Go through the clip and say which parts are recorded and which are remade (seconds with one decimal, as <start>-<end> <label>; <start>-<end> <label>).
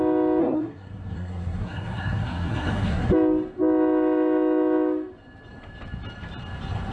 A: 0.0-0.4 recorded; 0.4-3.1 remade; 3.1-6.9 recorded